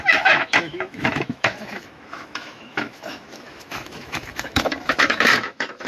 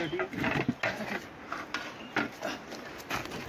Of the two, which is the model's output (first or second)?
first